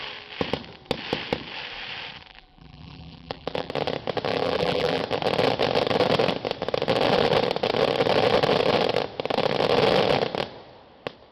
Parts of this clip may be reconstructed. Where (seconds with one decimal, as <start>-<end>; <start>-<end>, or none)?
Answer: 2.3-3.7; 4.3-5.0